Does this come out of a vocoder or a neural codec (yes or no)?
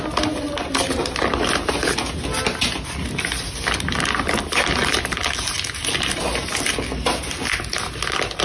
no